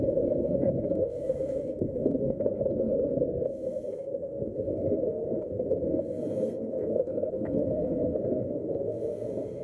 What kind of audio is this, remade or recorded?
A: remade